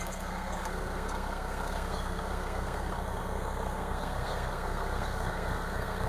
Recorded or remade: remade